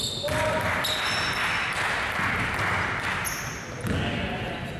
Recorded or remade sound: recorded